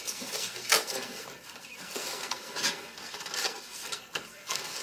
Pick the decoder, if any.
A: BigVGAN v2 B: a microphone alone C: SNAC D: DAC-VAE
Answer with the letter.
C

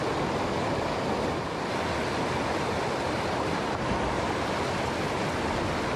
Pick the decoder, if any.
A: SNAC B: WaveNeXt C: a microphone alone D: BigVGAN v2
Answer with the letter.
C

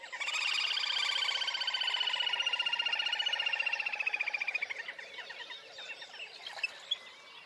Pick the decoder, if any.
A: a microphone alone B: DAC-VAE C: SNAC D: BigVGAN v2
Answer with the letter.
A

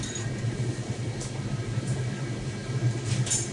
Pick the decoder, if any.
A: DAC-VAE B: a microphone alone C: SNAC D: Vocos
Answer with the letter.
B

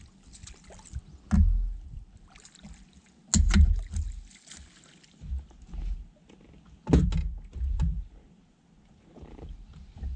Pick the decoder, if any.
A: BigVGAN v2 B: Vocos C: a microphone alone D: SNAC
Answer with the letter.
C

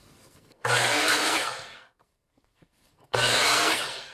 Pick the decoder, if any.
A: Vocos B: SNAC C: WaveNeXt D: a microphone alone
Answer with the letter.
B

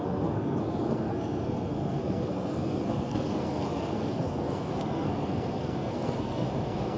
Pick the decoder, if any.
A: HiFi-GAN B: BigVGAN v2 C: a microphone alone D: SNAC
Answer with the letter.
D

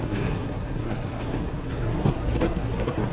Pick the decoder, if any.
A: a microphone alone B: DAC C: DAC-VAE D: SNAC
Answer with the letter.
D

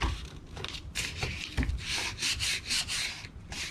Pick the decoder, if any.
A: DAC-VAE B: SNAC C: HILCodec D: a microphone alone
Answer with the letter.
D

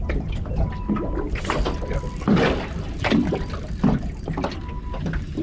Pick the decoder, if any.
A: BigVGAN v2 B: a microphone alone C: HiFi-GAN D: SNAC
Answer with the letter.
B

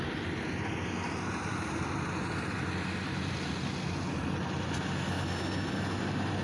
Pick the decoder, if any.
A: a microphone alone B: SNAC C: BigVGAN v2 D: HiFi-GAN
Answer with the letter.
A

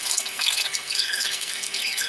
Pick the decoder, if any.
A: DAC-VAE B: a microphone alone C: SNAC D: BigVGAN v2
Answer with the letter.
C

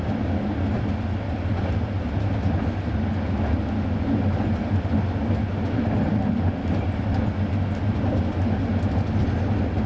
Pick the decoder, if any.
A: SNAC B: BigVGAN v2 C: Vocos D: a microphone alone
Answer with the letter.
D